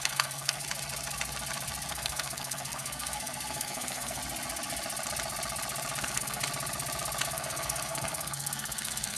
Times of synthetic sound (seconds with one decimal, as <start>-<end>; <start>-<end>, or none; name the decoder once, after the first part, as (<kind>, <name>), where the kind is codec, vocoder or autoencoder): 0.0-0.6 (codec, SNAC); 1.9-4.2; 6.0-6.4; 7.3-9.2

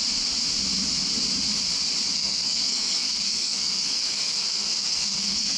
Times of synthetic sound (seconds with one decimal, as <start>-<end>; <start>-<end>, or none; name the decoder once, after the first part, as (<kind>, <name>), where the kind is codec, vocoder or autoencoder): 2.1-5.6 (codec, SNAC)

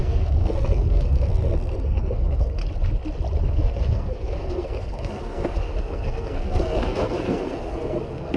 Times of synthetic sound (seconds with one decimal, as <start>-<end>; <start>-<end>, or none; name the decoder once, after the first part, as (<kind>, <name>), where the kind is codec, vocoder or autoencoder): 0.0-2.6 (codec, SNAC); 3.4-8.4

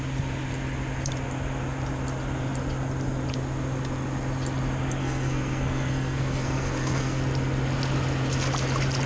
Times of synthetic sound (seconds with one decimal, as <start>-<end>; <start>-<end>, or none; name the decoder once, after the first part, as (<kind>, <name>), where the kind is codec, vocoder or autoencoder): 5.0-7.2 (codec, SNAC)

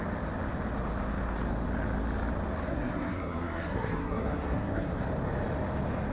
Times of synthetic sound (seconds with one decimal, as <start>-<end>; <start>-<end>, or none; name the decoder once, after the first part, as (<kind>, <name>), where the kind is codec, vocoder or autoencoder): 2.7-5.0 (codec, SNAC)